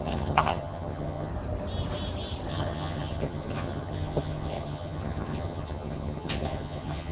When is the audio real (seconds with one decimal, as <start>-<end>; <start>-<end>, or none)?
1.3-2.5